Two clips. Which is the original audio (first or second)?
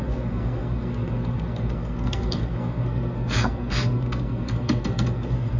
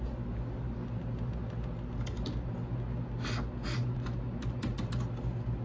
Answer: second